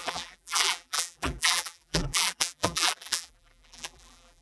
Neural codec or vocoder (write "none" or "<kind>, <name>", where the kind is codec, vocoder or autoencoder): vocoder, BigVGAN v2